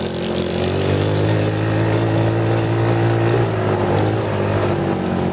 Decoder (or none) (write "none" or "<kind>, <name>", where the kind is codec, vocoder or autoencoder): none